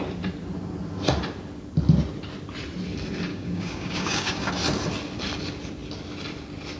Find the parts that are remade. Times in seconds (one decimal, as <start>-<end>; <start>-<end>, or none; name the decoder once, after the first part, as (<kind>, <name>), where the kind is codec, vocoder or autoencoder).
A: 3.3-4.5 (codec, DAC)